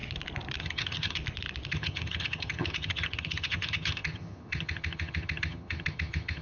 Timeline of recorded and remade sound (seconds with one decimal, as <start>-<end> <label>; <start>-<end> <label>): 0.0-0.6 recorded; 0.6-1.2 remade; 1.2-1.7 recorded; 1.7-6.4 remade